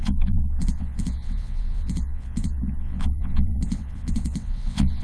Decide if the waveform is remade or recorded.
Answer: remade